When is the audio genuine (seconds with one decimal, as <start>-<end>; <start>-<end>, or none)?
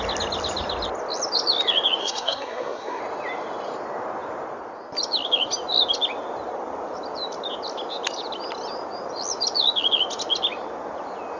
0.0-2.0; 3.0-11.4